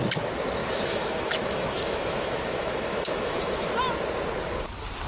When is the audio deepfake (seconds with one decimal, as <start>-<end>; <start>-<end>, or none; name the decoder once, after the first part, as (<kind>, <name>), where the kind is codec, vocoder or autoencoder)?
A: 0.6-3.7 (autoencoder, DAC-VAE)